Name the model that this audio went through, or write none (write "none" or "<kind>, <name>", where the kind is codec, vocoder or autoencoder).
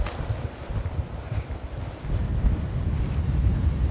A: none